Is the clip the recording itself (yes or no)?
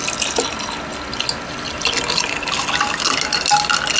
yes